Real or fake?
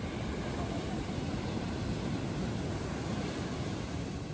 real